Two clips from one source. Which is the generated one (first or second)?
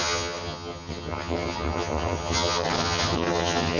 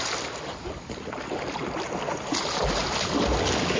first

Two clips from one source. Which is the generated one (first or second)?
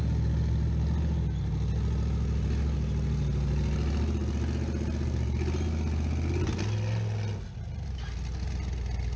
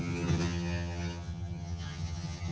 second